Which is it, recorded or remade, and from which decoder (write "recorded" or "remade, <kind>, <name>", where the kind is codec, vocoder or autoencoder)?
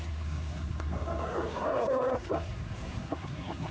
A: remade, codec, SNAC